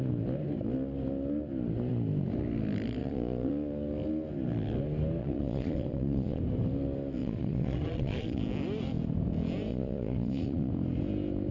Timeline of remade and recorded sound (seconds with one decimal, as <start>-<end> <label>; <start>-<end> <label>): 0.0-3.0 recorded; 3.0-3.5 remade; 3.5-5.2 recorded; 5.2-6.4 remade; 6.4-7.2 recorded; 7.2-8.4 remade; 8.4-9.7 recorded; 9.7-10.7 remade; 10.7-11.5 recorded